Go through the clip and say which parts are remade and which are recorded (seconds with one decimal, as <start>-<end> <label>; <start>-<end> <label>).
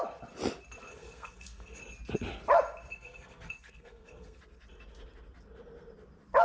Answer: 0.0-0.9 recorded; 0.9-1.8 remade; 1.8-2.9 recorded; 2.9-4.4 remade; 4.4-6.4 recorded